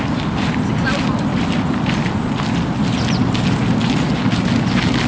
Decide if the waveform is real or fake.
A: real